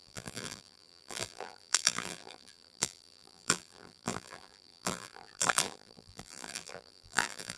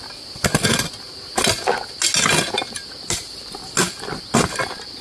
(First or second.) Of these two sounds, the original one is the second